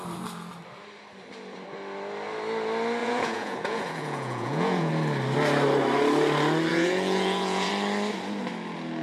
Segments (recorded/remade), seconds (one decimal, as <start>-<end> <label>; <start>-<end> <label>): 0.0-3.0 recorded; 3.0-4.9 remade; 4.9-6.7 recorded; 6.7-7.7 remade; 7.7-9.0 recorded